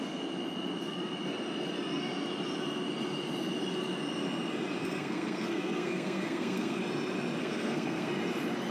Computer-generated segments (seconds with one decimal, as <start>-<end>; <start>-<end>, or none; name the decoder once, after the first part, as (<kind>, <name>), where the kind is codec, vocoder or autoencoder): 4.8-6.8 (codec, SNAC); 7.4-8.1

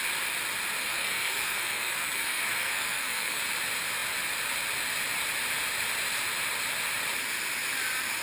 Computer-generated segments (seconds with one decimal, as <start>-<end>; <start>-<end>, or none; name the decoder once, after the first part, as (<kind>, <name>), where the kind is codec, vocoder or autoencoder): 0.8-3.4 (codec, SNAC)

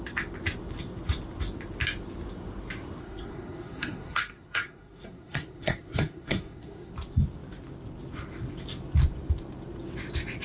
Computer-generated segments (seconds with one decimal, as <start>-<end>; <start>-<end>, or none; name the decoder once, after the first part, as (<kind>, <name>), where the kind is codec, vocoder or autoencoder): 3.0-6.9 (codec, SNAC)

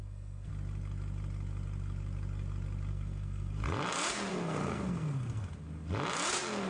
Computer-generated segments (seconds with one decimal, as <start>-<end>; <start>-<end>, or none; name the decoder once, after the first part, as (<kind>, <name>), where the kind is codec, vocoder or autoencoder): 0.0-0.5 (codec, SNAC); 2.9-3.5; 4.3-5.4